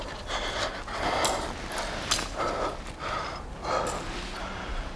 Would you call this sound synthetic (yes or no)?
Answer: no